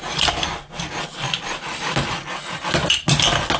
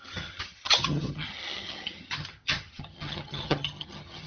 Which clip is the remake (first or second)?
second